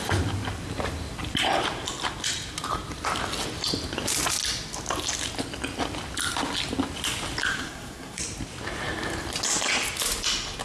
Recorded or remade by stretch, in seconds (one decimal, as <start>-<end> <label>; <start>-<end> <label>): 0.0-7.5 recorded; 7.5-8.2 remade; 8.2-10.6 recorded